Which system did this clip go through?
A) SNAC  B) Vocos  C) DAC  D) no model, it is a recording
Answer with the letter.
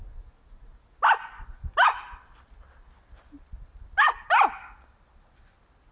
D